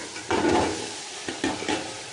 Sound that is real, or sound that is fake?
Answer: real